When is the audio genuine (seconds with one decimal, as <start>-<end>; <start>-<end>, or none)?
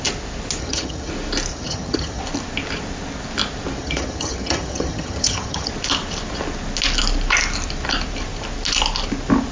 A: 0.0-0.6; 1.1-1.5; 2.2-3.8; 5.7-9.5